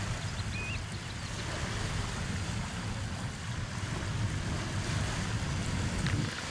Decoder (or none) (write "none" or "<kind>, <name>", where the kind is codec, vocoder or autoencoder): none